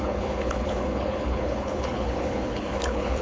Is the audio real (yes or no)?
no